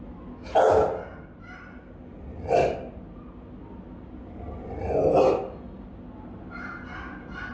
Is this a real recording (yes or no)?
yes